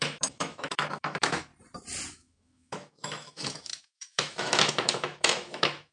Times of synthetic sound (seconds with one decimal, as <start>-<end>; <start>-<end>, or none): 0.0-1.5; 2.1-5.9